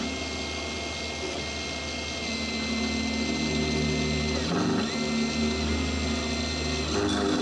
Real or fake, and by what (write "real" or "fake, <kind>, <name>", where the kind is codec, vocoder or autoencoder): real